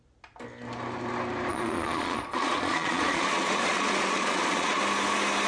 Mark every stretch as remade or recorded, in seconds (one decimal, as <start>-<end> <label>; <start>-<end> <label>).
0.0-1.5 recorded; 1.5-4.8 remade; 4.8-5.5 recorded